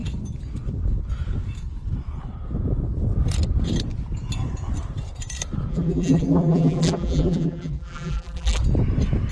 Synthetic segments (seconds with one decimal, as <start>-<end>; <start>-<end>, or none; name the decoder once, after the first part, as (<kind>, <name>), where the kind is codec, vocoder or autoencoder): 5.7-8.6 (vocoder, BigVGAN v2)